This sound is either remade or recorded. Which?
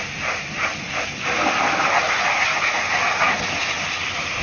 recorded